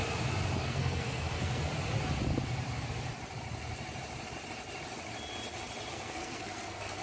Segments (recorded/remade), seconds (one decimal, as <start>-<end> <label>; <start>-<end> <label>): 0.0-0.6 recorded; 0.6-1.7 remade; 1.7-5.9 recorded; 5.9-7.0 remade